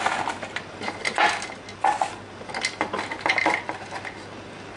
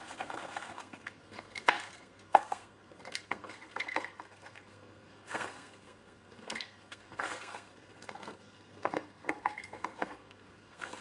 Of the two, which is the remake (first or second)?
second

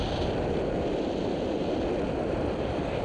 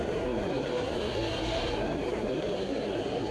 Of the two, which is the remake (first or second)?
second